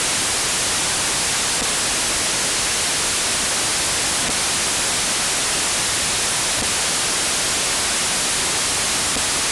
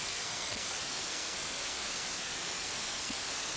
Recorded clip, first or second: first